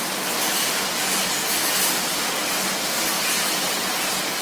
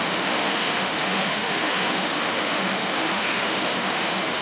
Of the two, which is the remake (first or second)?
second